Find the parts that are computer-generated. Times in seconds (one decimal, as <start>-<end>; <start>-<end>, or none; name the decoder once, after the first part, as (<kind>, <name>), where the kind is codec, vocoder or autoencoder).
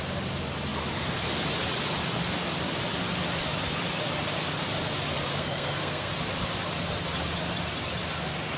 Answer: 5.3-6.1 (codec, SNAC)